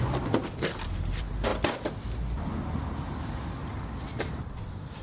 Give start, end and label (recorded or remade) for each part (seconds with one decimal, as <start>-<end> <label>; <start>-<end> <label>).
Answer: 0.0-1.5 remade; 1.5-4.2 recorded; 4.2-5.0 remade